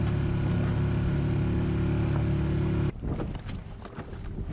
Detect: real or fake real